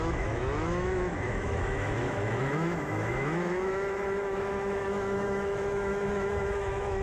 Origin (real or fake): fake